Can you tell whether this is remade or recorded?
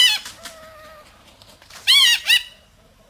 recorded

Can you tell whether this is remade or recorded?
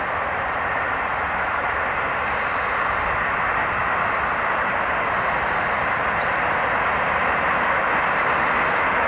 recorded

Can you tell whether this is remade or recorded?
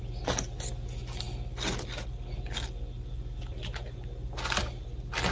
recorded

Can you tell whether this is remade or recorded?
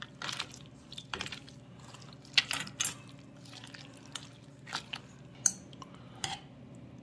recorded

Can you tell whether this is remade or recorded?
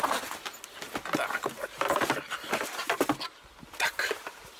recorded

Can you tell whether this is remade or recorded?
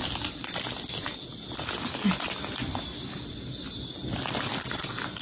recorded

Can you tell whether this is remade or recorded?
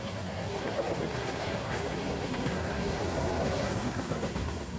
remade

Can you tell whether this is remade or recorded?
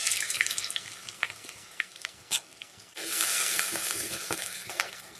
remade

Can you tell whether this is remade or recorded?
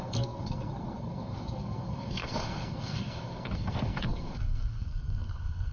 remade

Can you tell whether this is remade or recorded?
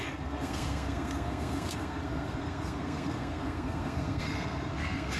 remade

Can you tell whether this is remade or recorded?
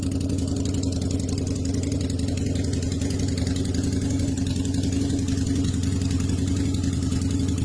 recorded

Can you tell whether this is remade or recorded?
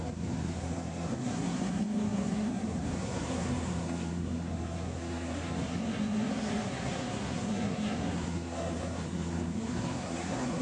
remade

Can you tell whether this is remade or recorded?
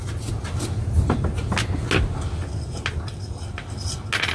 recorded